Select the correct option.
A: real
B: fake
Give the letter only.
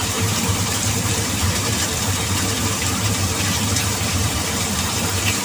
B